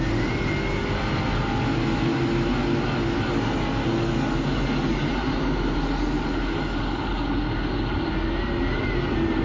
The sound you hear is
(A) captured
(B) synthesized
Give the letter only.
A